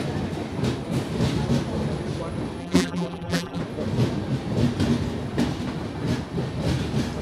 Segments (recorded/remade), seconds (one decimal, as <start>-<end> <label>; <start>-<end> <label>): 0.0-2.6 recorded; 2.6-3.6 remade; 3.6-7.2 recorded